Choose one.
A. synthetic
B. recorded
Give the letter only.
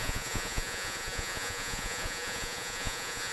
A